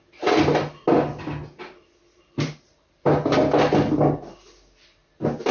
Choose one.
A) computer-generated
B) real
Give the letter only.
B